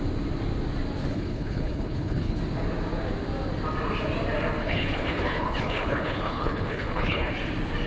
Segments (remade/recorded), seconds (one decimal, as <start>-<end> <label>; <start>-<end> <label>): 0.0-1.1 recorded; 1.1-2.4 remade; 2.4-4.6 recorded; 4.6-7.3 remade; 7.3-7.9 recorded